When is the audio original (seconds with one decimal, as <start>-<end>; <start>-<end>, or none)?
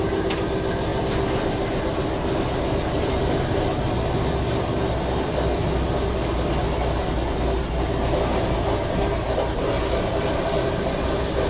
0.0-11.5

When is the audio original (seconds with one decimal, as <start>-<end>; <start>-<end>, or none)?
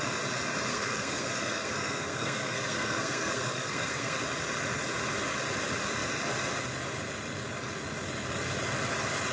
0.0-0.7; 4.2-9.3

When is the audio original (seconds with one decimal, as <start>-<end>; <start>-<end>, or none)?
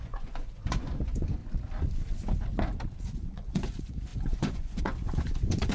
1.4-3.0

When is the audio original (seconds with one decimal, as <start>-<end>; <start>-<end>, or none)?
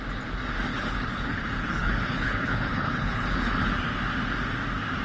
0.0-0.7; 3.7-5.0